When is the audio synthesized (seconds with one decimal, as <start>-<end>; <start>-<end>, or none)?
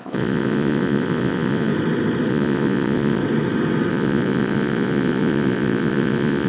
0.0-1.7; 2.3-3.2; 3.9-6.5